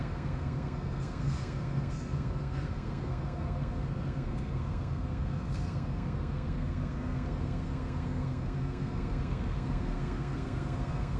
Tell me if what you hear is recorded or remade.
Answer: remade